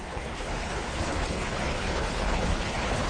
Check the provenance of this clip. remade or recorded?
remade